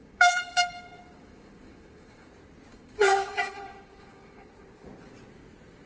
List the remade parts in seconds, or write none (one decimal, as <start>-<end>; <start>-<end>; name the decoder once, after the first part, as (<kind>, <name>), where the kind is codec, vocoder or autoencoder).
0.0-2.3 (codec, DAC); 2.7-4.5